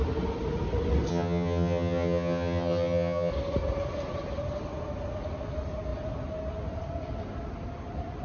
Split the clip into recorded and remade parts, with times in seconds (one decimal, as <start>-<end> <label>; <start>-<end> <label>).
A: 0.0-1.1 recorded; 1.1-3.3 remade; 3.3-8.2 recorded

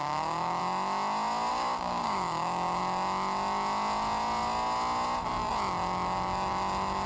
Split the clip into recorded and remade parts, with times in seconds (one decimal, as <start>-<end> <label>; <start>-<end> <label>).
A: 0.0-0.6 remade; 0.6-1.5 recorded; 1.5-2.8 remade; 2.8-7.1 recorded

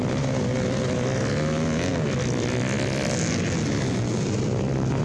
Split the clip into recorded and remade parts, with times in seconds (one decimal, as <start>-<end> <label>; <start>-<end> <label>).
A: 0.0-5.0 recorded

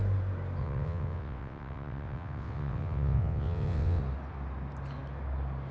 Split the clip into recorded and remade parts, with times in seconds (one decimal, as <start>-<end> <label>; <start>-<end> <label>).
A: 0.0-0.6 recorded; 0.6-4.0 remade; 4.0-5.7 recorded

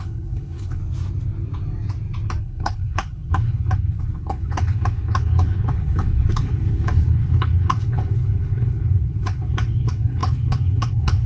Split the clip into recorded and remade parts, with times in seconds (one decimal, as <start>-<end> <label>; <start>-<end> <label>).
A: 0.0-0.8 remade; 0.8-2.4 recorded; 2.4-11.3 remade

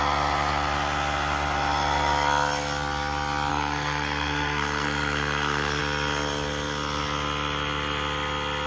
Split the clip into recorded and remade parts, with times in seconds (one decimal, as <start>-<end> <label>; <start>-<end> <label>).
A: 0.0-3.5 recorded; 3.5-5.8 remade; 5.8-8.7 recorded

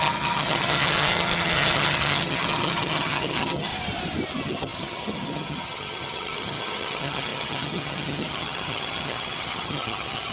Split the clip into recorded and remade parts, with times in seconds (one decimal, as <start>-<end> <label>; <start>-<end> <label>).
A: 0.0-3.7 remade; 3.7-4.3 recorded; 4.3-10.3 remade

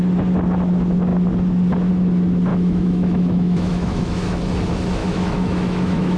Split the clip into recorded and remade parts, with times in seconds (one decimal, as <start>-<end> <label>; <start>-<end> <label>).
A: 0.0-2.5 recorded; 2.5-4.4 remade; 4.4-5.0 recorded; 5.0-6.2 remade